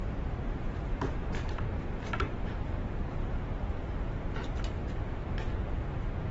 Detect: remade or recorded remade